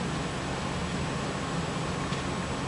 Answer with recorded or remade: recorded